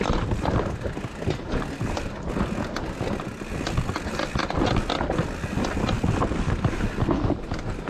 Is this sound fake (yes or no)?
no